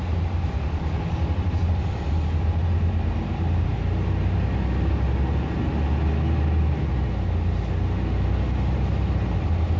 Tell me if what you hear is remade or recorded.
recorded